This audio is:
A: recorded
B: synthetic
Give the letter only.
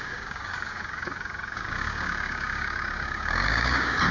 B